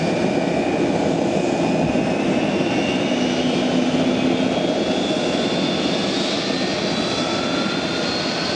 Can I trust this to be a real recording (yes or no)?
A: yes